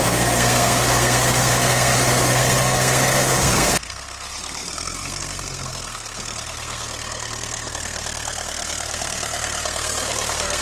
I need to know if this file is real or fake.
fake